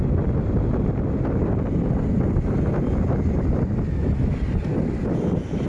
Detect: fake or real real